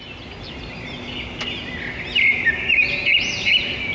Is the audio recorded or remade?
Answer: recorded